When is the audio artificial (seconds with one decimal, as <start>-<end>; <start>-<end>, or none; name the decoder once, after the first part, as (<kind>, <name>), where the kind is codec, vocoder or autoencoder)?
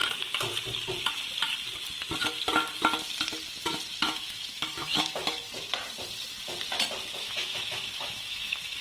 4.0-5.5 (autoencoder, DAC-VAE); 7.2-8.8